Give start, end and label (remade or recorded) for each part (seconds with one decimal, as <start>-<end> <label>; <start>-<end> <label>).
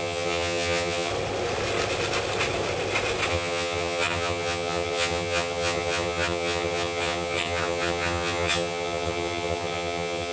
0.0-1.1 remade; 1.1-3.3 recorded; 3.3-10.3 remade